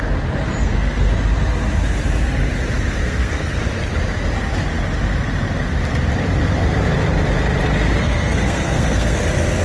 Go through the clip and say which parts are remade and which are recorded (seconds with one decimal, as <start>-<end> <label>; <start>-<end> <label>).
0.0-0.6 recorded; 0.6-1.1 remade; 1.1-3.0 recorded; 3.0-3.6 remade; 3.6-8.0 recorded; 8.0-9.2 remade; 9.2-9.6 recorded